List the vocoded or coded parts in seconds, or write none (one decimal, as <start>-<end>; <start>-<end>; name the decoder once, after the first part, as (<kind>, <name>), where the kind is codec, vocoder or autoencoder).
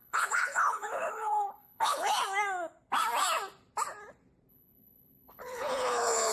0.0-2.1 (codec, HILCodec); 4.5-6.3